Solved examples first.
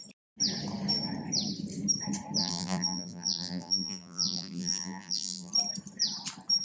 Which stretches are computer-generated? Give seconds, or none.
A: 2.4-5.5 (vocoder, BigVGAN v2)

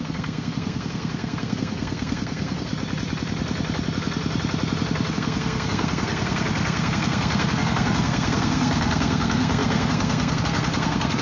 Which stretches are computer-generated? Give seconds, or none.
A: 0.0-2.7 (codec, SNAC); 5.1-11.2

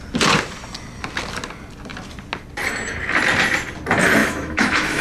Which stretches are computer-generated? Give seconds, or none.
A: 4.2-5.0 (autoencoder, DAC-VAE)

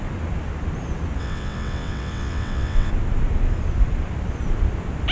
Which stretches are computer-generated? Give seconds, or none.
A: 1.2-2.9 (vocoder, WaveNeXt)

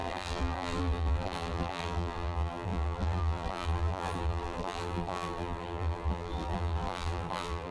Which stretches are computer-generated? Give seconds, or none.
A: 0.0-7.7 (vocoder, BigVGAN v2)